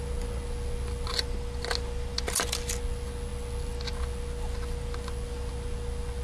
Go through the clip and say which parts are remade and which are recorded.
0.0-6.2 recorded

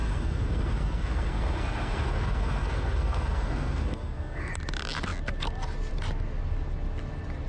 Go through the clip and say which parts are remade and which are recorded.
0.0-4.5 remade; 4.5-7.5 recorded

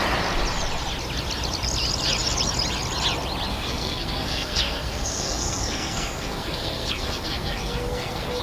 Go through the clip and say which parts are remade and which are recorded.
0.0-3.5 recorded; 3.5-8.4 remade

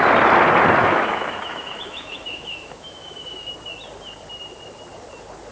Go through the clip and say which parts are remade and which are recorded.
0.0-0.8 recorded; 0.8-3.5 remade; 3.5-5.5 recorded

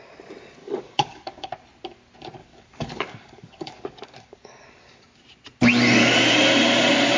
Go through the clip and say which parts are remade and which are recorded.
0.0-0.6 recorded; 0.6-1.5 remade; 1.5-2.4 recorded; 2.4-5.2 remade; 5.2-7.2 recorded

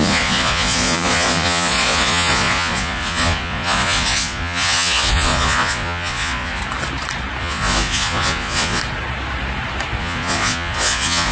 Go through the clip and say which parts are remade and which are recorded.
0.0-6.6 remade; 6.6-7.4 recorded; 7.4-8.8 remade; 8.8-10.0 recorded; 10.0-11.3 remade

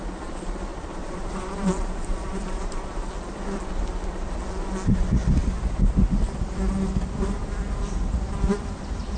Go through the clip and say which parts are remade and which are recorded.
0.0-0.7 recorded; 0.7-3.1 remade; 3.1-9.2 recorded

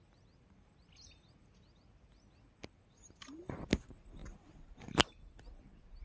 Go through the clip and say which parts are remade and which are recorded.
0.0-6.0 recorded